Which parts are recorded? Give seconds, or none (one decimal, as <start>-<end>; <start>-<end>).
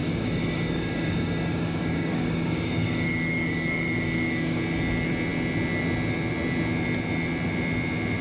4.6-8.2